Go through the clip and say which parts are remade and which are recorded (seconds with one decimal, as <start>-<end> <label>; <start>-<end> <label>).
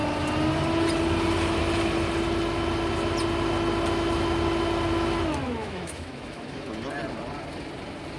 0.0-5.6 recorded; 5.6-6.7 remade; 6.7-8.2 recorded